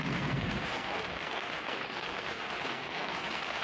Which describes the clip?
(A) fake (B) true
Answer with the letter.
A